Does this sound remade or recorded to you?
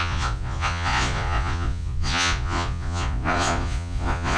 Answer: remade